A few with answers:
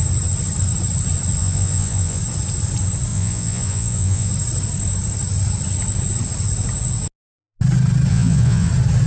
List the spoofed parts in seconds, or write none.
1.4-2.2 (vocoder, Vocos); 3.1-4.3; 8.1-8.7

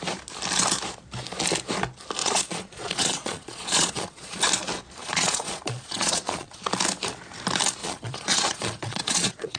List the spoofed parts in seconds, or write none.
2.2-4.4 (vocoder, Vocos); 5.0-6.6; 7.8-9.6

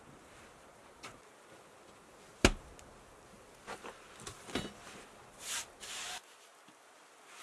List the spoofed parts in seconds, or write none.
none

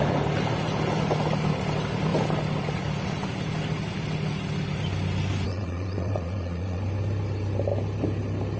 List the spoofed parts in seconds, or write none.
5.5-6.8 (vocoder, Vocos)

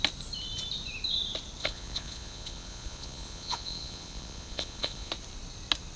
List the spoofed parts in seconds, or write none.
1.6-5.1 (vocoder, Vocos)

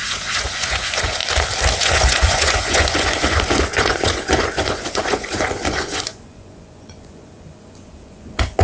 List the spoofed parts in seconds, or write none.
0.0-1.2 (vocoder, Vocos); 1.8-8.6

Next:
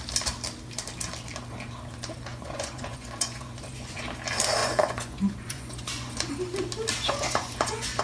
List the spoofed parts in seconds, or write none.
2.3-4.0 (vocoder, Vocos); 4.6-6.3; 7.0-8.0